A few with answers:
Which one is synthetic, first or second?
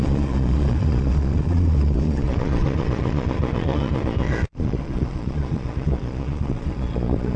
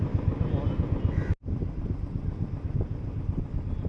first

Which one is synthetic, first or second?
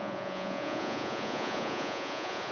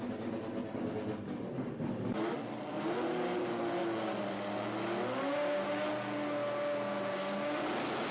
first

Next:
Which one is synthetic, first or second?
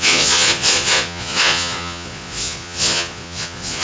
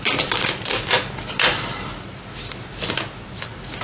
first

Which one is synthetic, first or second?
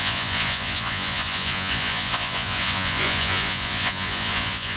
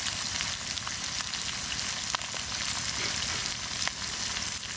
first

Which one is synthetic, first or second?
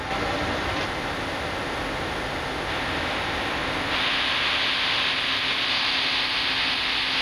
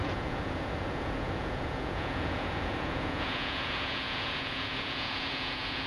second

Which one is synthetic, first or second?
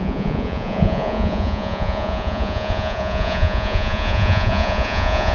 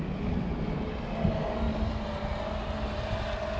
first